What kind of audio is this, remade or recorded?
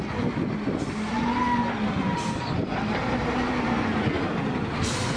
recorded